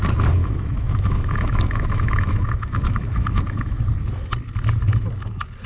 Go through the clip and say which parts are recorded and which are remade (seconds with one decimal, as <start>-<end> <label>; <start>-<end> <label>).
0.0-0.4 recorded; 0.4-3.8 remade; 3.8-5.7 recorded